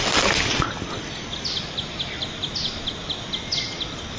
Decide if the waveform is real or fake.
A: real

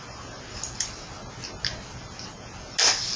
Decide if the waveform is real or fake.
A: real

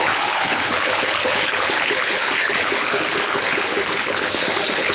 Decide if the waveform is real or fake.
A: fake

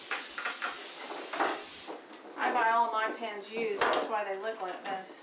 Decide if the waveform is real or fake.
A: real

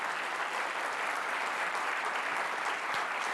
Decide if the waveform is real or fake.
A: fake